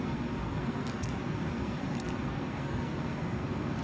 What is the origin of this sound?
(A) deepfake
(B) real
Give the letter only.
A